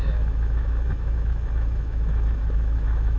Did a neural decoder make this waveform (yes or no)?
yes